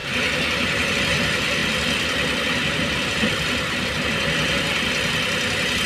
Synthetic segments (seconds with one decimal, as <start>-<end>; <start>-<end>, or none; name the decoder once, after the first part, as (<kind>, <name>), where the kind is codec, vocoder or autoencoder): none